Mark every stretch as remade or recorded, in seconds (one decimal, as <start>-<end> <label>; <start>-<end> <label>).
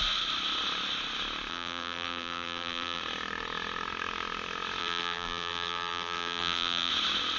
0.0-1.5 recorded; 1.5-3.0 remade; 3.0-4.8 recorded; 4.8-6.9 remade; 6.9-7.4 recorded